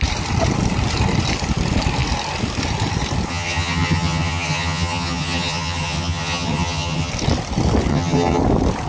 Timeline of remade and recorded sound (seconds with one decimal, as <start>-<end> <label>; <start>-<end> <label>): 0.0-3.3 recorded; 3.3-7.1 remade; 7.1-7.9 recorded; 7.9-8.4 remade; 8.4-8.9 recorded